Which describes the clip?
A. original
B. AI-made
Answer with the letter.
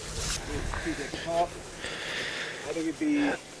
A